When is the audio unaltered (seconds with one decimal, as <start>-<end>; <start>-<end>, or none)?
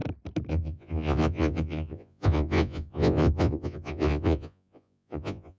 0.0-0.5